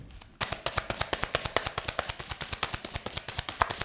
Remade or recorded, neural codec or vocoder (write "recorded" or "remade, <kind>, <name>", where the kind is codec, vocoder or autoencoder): recorded